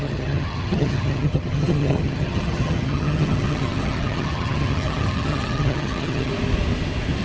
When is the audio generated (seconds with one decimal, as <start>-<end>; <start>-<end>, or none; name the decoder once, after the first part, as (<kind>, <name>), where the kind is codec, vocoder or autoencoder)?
0.0-6.3 (vocoder, HiFi-GAN)